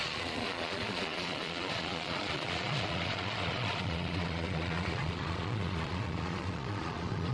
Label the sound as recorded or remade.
remade